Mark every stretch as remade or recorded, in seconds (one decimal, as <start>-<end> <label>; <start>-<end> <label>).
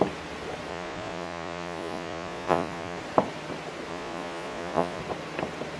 0.0-0.7 recorded; 0.7-3.0 remade; 3.0-3.9 recorded; 3.9-5.0 remade; 5.0-5.8 recorded